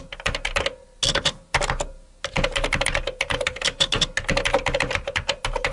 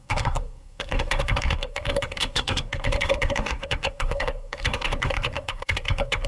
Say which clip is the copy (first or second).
second